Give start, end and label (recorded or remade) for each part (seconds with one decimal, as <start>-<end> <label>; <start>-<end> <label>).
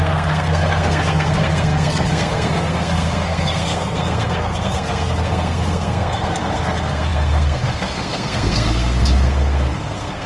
0.0-10.3 remade